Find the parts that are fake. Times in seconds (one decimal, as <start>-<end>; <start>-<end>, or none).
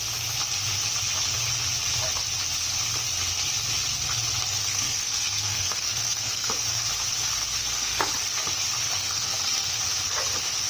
4.6-6.5; 7.6-8.1; 8.9-9.8